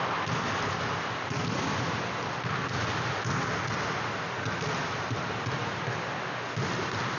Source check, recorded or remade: recorded